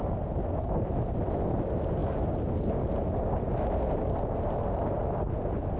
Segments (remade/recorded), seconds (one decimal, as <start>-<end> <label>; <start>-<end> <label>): 0.0-5.8 recorded